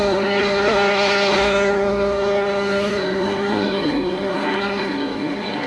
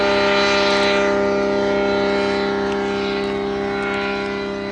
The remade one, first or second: first